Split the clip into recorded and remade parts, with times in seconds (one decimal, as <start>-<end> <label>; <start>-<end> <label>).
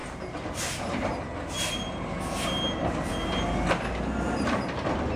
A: 0.0-5.2 recorded